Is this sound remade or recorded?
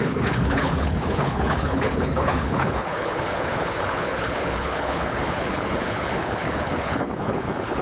remade